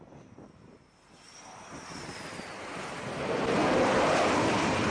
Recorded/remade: remade